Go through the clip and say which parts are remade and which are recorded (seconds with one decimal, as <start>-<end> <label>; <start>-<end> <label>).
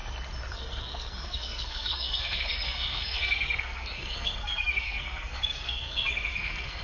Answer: 0.0-0.5 recorded; 0.5-6.8 remade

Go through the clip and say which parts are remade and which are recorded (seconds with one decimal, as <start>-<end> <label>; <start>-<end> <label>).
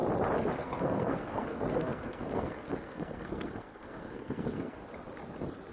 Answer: 0.0-0.5 recorded; 0.5-4.8 remade; 4.8-5.7 recorded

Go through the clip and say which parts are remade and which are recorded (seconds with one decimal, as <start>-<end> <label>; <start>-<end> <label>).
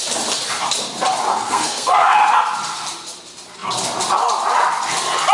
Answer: 0.0-1.3 recorded; 1.3-2.2 remade; 2.2-5.3 recorded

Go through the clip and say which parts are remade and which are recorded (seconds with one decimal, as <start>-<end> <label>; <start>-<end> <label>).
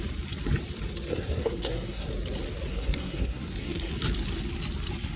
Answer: 0.0-1.1 recorded; 1.1-2.1 remade; 2.1-2.7 recorded; 2.7-3.9 remade; 3.9-5.2 recorded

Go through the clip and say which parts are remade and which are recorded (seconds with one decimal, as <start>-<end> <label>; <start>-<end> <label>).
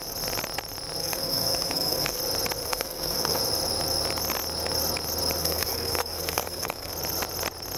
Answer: 0.0-1.0 recorded; 1.0-2.2 remade; 2.2-2.6 recorded; 2.6-3.4 remade; 3.4-5.4 recorded; 5.4-6.9 remade; 6.9-7.8 recorded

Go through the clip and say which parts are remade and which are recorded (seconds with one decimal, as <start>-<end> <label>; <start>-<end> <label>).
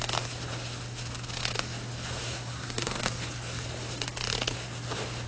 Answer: 0.0-2.2 recorded; 2.2-2.9 remade; 2.9-5.3 recorded